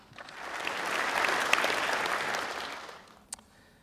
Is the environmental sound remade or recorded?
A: recorded